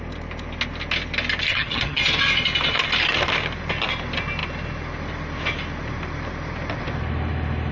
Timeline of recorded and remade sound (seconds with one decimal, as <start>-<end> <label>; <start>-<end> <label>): 0.0-1.5 recorded; 1.5-2.0 remade; 2.0-7.7 recorded